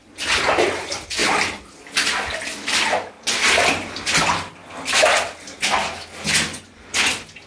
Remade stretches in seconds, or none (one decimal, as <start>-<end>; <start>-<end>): 6.5-7.1